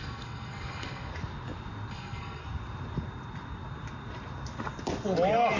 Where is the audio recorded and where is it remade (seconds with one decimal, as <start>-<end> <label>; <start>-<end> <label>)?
0.0-1.1 remade; 1.1-1.9 recorded; 1.9-2.4 remade; 2.4-5.6 recorded